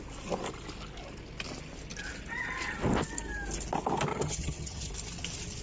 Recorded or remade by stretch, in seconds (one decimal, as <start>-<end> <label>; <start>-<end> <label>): 0.0-4.1 recorded; 4.1-4.9 remade; 4.9-5.6 recorded